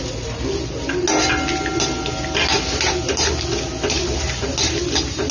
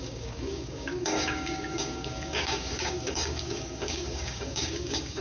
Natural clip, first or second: first